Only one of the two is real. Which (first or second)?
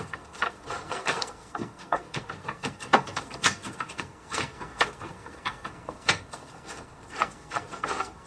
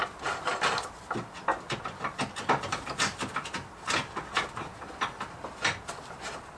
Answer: second